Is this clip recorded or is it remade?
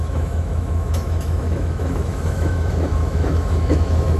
remade